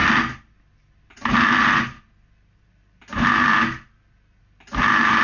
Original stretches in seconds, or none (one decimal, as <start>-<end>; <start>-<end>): 0.0-5.2

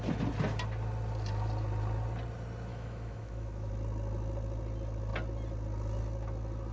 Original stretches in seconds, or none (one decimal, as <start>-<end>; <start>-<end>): 0.0-2.7; 3.7-6.7

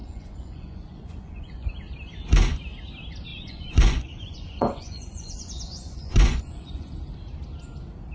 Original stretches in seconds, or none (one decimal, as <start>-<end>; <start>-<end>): 1.7-3.3; 6.9-8.1